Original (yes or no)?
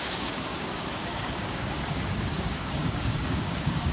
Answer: no